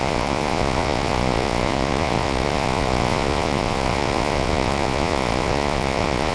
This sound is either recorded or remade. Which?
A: remade